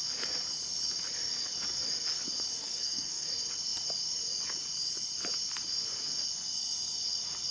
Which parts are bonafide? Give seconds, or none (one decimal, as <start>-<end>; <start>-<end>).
0.0-2.6; 3.3-7.5